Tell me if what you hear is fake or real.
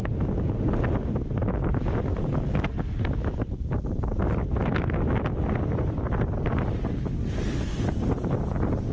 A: real